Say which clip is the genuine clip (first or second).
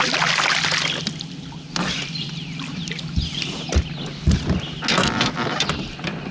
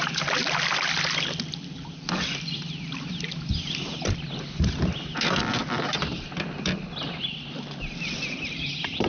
first